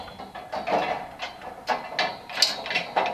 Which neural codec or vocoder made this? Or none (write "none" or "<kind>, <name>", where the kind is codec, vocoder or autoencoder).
none